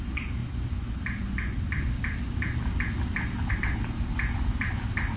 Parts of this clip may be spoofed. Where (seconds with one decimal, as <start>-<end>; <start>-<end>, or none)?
0.0-0.4; 3.5-5.2